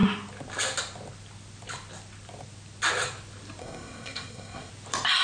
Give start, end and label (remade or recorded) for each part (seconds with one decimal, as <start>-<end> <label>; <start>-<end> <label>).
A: 0.0-3.6 recorded; 3.6-4.7 remade; 4.7-5.2 recorded